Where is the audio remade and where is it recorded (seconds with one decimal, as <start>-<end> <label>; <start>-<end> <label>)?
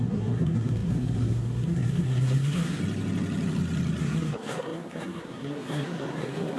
0.0-2.8 remade; 2.8-4.0 recorded; 4.0-6.6 remade